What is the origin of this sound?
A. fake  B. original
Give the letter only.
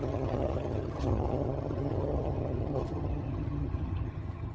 A